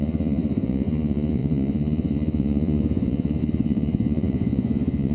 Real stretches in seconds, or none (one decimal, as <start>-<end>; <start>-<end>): none